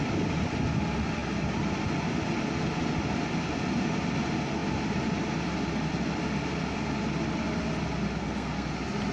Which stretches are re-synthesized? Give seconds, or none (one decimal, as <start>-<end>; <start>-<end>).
8.2-8.7